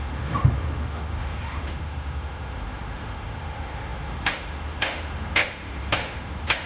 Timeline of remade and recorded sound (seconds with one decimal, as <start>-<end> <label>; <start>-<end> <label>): 0.0-6.7 remade